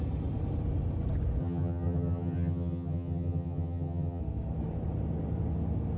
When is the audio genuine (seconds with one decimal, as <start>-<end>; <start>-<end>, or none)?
0.0-1.4; 4.2-6.0